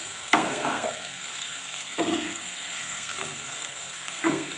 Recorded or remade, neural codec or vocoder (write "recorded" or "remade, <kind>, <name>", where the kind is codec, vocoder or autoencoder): remade, codec, SNAC